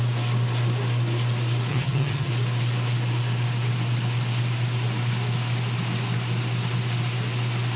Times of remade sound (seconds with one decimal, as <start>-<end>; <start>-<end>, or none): 1.7-2.3